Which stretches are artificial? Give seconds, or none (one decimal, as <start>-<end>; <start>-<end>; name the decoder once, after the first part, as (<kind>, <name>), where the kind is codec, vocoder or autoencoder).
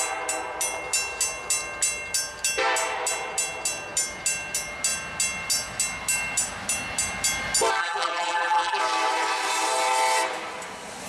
7.8-8.8 (vocoder, BigVGAN v2)